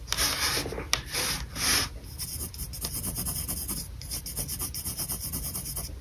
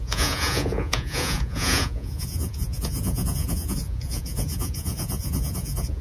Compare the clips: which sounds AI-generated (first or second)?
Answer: second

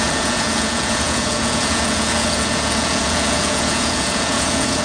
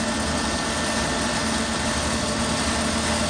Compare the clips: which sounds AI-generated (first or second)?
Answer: first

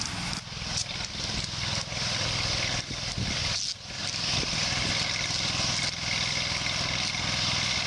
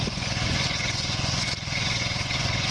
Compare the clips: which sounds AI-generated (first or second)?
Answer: second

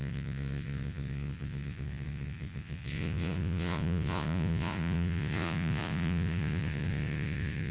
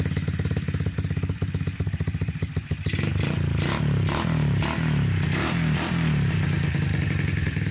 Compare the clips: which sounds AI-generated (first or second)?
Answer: first